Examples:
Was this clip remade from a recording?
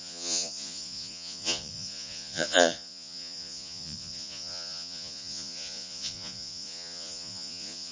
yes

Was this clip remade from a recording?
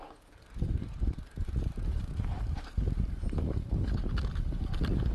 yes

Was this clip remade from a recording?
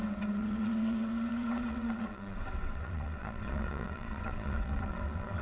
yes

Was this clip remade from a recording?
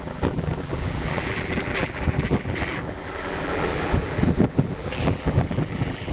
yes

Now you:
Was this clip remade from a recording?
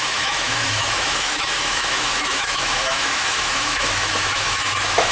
yes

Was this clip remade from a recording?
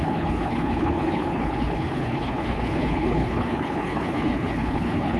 yes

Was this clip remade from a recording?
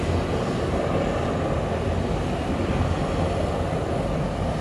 no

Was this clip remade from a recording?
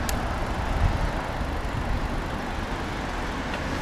no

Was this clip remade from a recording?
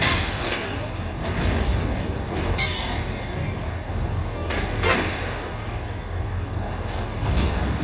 yes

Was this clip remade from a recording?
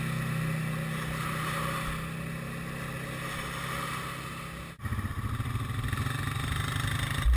no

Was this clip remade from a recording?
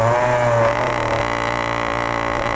no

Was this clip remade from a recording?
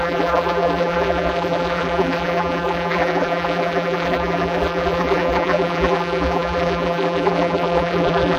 yes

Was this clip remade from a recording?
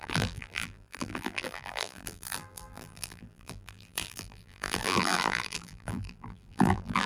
yes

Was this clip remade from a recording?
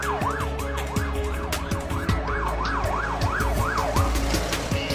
no